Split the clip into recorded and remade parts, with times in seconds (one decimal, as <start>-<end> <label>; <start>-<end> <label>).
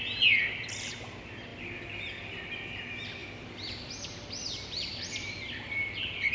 0.0-1.5 recorded; 1.5-2.8 remade; 2.8-3.2 recorded; 3.2-5.7 remade; 5.7-6.3 recorded